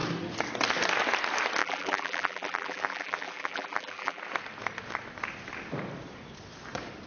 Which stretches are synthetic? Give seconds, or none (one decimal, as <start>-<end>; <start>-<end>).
1.6-4.2